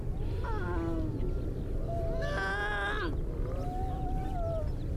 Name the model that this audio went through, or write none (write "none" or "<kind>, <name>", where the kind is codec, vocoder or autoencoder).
none